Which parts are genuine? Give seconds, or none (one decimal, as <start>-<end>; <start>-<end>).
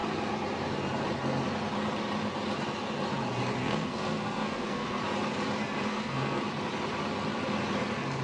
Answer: 0.0-3.6; 5.0-5.9; 6.4-8.2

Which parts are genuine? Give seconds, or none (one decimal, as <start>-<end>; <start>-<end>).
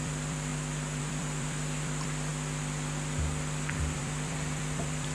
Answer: 0.5-1.0; 2.3-3.7